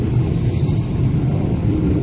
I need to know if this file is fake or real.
real